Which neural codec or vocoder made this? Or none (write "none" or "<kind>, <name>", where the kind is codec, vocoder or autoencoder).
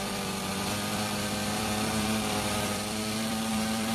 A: vocoder, BigVGAN v2